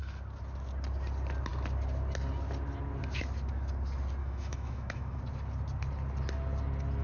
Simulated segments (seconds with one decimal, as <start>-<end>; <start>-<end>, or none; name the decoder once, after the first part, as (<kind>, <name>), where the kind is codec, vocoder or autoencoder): 4.2-5.2 (autoencoder, DAC-VAE)